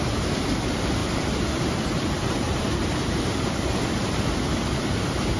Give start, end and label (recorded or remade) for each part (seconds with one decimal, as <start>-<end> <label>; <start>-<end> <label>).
0.0-1.0 recorded; 1.0-4.2 remade; 4.2-5.4 recorded